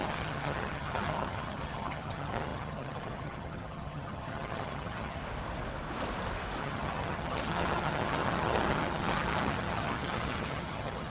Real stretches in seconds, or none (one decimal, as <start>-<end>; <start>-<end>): 5.2-6.6